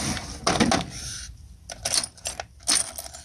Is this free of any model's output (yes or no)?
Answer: yes